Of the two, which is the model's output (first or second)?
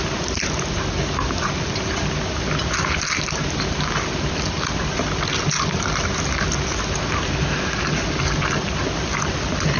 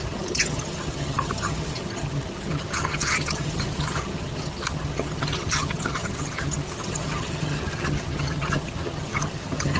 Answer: second